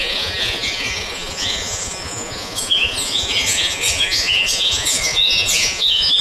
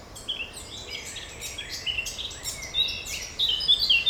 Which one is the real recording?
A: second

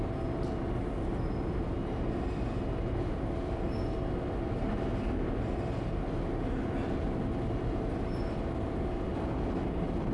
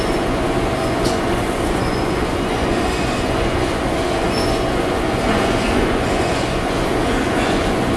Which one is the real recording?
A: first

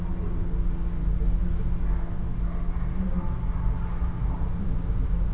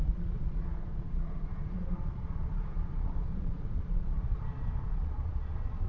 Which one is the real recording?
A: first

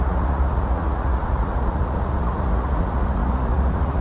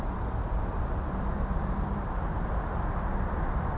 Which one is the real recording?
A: second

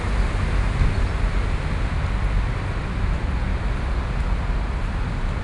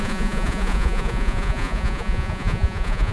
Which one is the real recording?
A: first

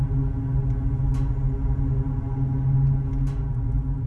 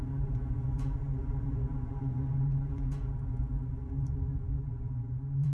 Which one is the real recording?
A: first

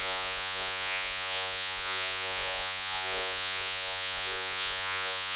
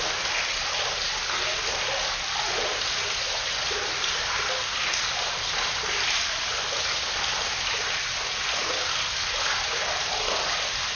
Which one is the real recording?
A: second